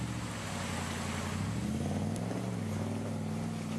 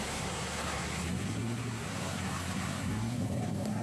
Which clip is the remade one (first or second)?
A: second